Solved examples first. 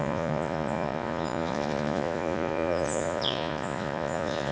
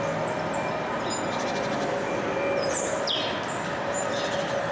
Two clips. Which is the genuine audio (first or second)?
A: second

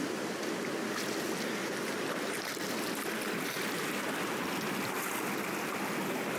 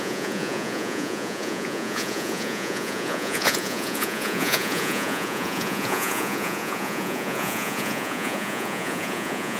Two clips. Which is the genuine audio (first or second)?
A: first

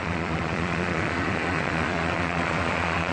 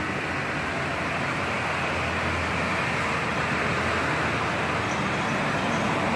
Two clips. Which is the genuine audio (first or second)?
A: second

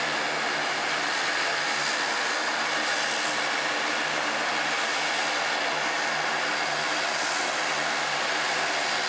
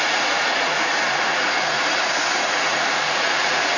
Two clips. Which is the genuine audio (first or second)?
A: first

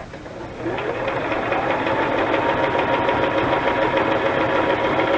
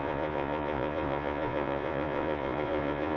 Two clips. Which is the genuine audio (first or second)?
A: first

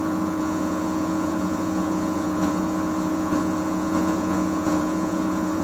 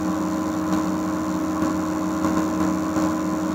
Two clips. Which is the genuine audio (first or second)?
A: second